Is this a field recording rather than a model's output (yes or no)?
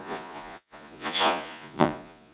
no